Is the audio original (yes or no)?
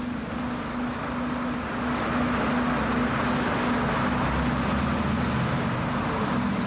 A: yes